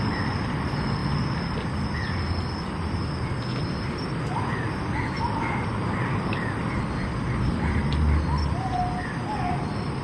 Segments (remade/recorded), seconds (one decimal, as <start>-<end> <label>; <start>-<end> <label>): 0.0-10.0 recorded